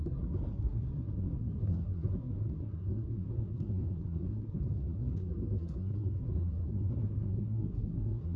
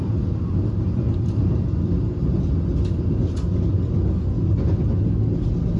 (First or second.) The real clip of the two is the second